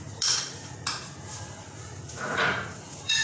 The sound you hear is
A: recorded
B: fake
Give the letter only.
B